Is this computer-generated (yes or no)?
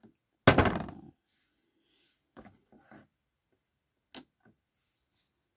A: no